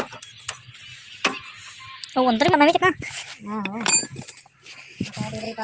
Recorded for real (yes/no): yes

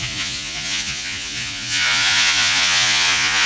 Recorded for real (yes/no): no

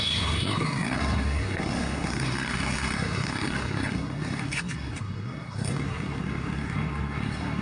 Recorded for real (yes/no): no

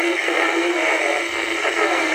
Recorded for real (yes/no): no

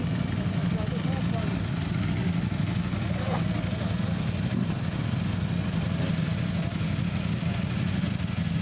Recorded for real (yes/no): yes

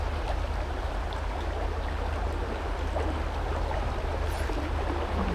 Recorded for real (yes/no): yes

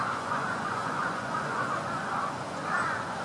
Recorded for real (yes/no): no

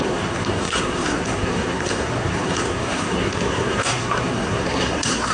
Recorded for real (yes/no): no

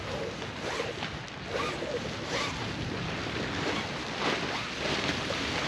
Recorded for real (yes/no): yes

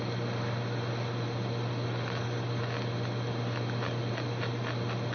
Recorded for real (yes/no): yes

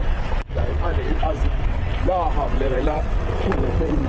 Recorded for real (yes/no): no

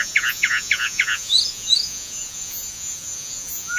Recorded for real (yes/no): no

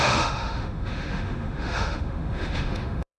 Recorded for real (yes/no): no